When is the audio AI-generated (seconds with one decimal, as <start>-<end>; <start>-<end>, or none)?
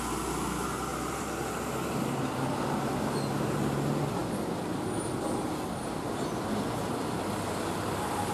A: none